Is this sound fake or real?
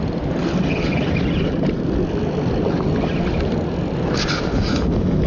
real